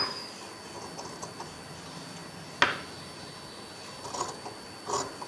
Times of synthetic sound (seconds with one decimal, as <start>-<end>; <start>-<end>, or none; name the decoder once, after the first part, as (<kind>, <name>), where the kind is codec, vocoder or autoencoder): none